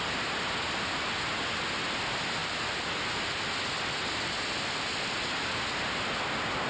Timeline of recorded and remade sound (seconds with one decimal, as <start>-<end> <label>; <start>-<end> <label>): 0.0-2.4 recorded; 2.4-3.0 remade; 3.0-6.7 recorded